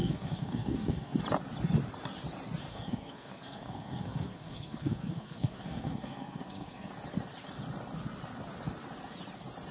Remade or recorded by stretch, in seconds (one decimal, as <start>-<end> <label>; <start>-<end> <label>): 0.0-1.2 remade; 1.2-2.7 recorded; 2.7-6.9 remade; 6.9-9.7 recorded